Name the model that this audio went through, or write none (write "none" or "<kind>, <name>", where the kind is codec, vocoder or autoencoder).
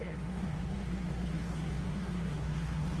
codec, SNAC